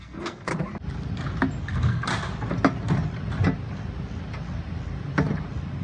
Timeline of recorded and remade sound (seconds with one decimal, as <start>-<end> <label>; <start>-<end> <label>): 0.0-0.5 remade; 0.5-1.6 recorded; 1.6-2.1 remade; 2.1-5.8 recorded

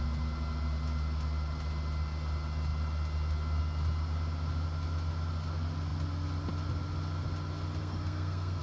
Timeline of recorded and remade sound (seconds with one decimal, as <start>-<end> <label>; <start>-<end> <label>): 0.0-7.8 recorded; 7.8-8.6 remade

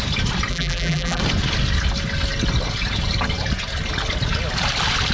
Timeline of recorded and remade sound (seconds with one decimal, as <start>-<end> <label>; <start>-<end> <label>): 0.0-0.5 recorded; 0.5-1.2 remade; 1.2-5.1 recorded

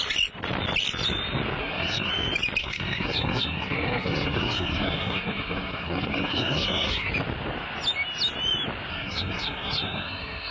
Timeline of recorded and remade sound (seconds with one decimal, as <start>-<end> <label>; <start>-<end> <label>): 0.0-1.6 recorded; 1.6-2.1 remade; 2.1-2.6 recorded; 2.6-7.1 remade; 7.1-8.9 recorded; 8.9-10.5 remade

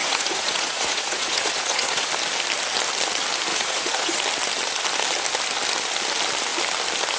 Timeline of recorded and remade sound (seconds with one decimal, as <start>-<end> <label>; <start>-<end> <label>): 0.0-2.1 remade; 2.1-3.5 recorded; 3.5-4.2 remade; 4.2-7.2 recorded

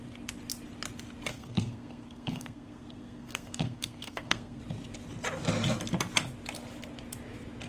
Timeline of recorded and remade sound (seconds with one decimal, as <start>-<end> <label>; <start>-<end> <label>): 0.0-1.3 recorded; 1.3-4.6 remade; 4.6-7.7 recorded

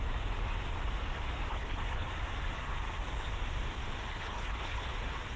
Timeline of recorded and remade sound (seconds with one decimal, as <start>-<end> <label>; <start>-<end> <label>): 0.0-1.5 recorded; 1.5-2.1 remade; 2.1-4.1 recorded; 4.1-4.9 remade; 4.9-5.4 recorded

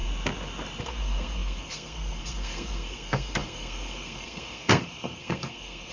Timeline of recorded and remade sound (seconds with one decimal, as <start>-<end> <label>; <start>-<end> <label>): 0.0-0.8 recorded; 0.8-5.9 remade